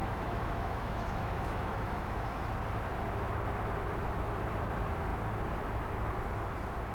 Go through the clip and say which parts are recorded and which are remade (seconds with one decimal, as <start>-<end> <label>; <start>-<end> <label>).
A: 0.0-2.5 remade; 2.5-6.9 recorded

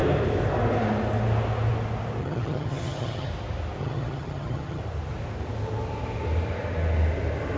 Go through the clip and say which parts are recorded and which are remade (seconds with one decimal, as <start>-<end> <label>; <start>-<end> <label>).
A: 0.0-2.2 recorded; 2.2-3.3 remade; 3.3-3.8 recorded; 3.8-4.8 remade; 4.8-7.6 recorded

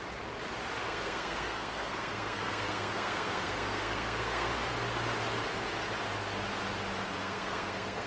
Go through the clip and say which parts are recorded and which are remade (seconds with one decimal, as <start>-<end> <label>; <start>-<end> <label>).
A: 0.0-0.8 recorded; 0.8-4.5 remade; 4.5-7.2 recorded; 7.2-8.1 remade